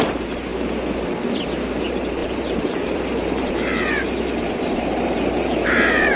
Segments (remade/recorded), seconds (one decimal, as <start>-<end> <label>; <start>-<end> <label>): 0.0-0.5 remade; 0.5-1.7 recorded; 1.7-6.2 remade

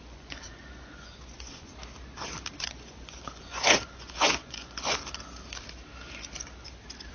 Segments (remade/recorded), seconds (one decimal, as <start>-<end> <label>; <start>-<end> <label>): 0.0-1.7 remade; 1.7-2.6 recorded; 2.6-5.0 remade; 5.0-7.1 recorded

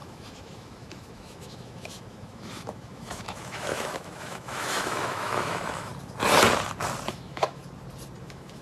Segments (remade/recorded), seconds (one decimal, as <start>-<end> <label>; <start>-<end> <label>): 0.0-5.9 remade; 5.9-7.1 recorded; 7.1-7.6 remade; 7.6-8.2 recorded; 8.2-8.6 remade

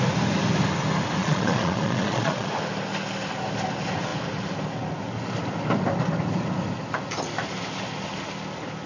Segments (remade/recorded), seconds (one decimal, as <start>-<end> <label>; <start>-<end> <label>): 0.0-1.2 recorded; 1.2-2.5 remade; 2.5-8.9 recorded

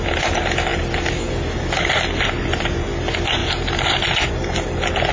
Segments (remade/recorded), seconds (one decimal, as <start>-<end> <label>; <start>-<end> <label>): 0.0-5.1 recorded